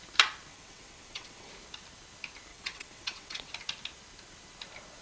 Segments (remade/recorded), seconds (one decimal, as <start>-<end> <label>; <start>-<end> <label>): 0.0-0.5 recorded; 0.5-1.5 remade; 1.5-2.5 recorded; 2.5-3.5 remade; 3.5-5.0 recorded